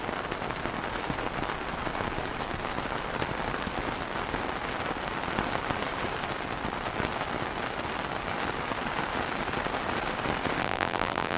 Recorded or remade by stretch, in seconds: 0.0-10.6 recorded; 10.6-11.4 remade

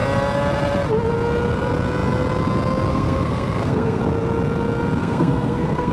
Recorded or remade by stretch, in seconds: 0.0-2.9 recorded; 2.9-4.0 remade; 4.0-5.0 recorded; 5.0-5.9 remade

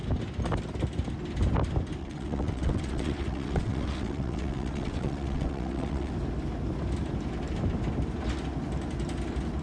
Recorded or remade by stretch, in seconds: 0.0-2.0 recorded; 2.0-6.1 remade; 6.1-9.6 recorded

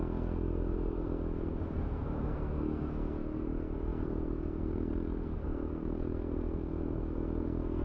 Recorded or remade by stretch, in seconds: 0.0-7.8 remade

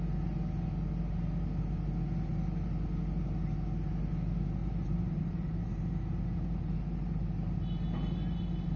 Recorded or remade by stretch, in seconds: 0.0-4.6 recorded; 4.6-5.7 remade; 5.7-8.8 recorded